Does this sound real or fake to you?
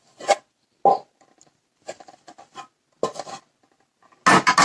real